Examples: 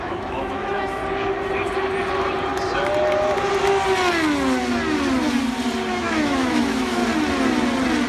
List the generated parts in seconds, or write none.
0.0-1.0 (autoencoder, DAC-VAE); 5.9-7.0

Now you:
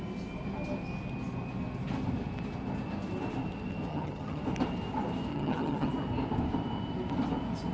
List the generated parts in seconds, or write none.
3.9-4.4 (vocoder, HiFi-GAN); 5.3-5.9

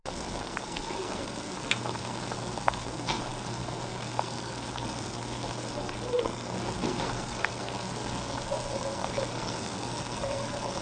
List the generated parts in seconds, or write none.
0.0-10.8 (codec, SNAC)

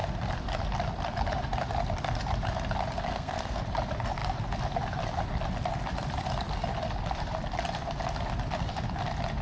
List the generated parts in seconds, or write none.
3.1-3.6 (codec, SNAC)

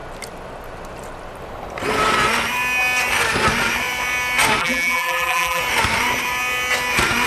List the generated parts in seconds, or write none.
4.6-5.6 (vocoder, BigVGAN v2)

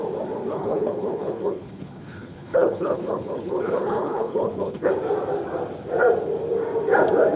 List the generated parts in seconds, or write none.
0.5-4.9 (codec, HILCodec)

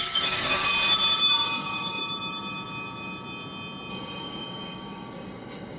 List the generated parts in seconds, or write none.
0.0-0.7 (codec, DAC); 1.3-2.0; 3.9-5.8

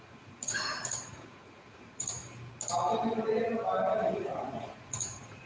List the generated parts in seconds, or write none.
0.0-2.2 (vocoder, Vocos); 4.1-5.5